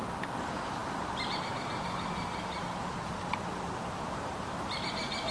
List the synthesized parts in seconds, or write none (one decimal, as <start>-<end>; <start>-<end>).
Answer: none